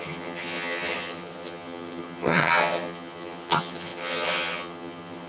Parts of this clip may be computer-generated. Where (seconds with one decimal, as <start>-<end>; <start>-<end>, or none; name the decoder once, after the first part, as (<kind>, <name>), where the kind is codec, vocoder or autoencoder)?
0.0-5.3 (vocoder, HiFi-GAN)